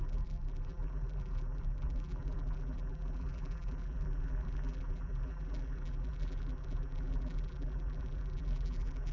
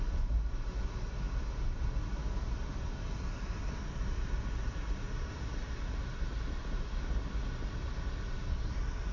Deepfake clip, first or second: first